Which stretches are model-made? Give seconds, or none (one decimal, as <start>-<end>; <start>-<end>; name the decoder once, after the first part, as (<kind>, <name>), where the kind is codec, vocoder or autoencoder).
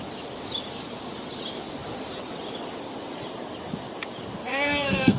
4.4-5.2 (codec, SNAC)